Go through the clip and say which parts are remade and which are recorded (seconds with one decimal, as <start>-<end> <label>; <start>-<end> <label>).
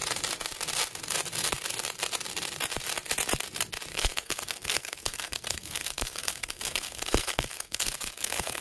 0.0-3.9 recorded; 3.9-8.6 remade